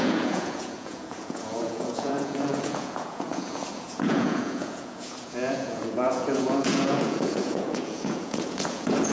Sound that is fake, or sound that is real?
fake